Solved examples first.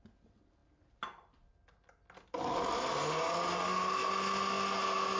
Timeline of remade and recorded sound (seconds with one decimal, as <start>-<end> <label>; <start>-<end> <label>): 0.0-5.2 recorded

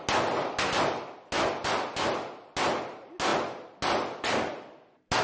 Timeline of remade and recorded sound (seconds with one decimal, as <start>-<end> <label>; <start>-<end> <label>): 0.0-5.2 recorded

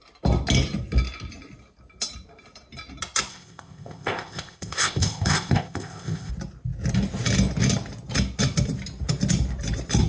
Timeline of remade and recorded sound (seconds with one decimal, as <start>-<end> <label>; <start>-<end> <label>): 0.0-3.3 recorded; 3.3-6.3 remade; 6.3-10.1 recorded